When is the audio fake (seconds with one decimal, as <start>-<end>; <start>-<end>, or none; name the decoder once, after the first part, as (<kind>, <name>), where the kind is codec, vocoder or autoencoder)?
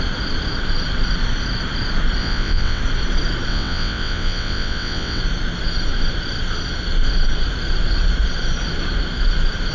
2.2-2.8 (vocoder, WaveNeXt); 3.5-5.2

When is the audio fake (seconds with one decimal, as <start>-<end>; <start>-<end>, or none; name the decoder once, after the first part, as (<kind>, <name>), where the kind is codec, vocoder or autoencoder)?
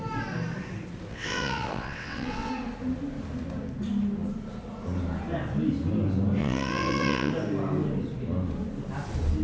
1.1-2.5 (vocoder, WaveNeXt); 6.4-7.3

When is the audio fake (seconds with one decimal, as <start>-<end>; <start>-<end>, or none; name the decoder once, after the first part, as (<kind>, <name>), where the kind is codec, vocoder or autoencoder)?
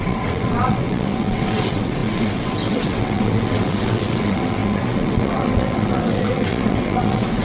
0.0-7.4 (vocoder, WaveNeXt)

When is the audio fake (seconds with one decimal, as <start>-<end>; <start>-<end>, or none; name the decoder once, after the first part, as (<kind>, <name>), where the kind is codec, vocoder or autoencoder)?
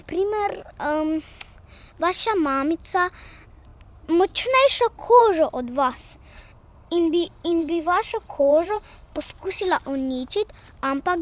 6.3-9.6 (vocoder, WaveNeXt)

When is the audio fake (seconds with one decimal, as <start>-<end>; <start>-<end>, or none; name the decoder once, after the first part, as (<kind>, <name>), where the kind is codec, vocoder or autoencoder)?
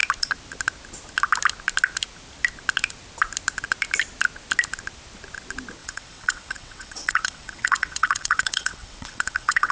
5.8-9.7 (vocoder, WaveNeXt)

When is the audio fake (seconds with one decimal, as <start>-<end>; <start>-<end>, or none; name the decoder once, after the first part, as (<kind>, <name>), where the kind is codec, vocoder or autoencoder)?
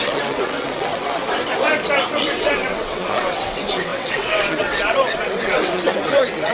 0.0-1.2 (vocoder, WaveNeXt); 2.2-6.5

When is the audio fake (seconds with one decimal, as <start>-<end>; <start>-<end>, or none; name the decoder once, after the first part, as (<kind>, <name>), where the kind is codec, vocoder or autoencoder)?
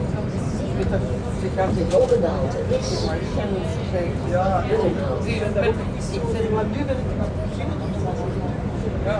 none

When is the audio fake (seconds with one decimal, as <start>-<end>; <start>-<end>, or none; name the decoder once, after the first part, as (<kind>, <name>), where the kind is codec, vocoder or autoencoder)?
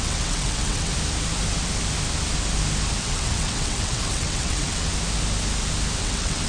0.0-0.9 (vocoder, WaveNeXt); 3.0-4.9; 6.0-6.5